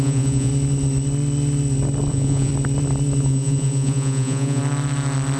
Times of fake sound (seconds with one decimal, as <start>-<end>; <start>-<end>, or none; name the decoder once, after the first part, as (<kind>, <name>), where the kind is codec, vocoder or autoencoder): 0.0-0.5 (vocoder, Vocos); 2.1-2.5; 3.2-4.6